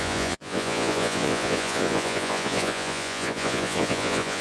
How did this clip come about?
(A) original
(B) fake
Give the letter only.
B